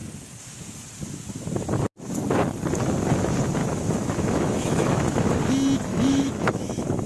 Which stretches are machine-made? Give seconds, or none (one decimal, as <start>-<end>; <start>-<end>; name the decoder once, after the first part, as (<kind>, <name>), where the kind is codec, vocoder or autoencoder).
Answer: 3.6-5.4 (autoencoder, DAC-VAE); 5.9-7.1